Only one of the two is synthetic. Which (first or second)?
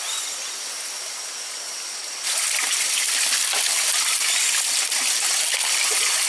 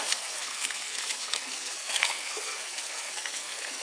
second